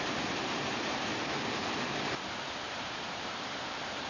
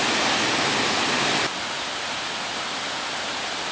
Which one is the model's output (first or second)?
first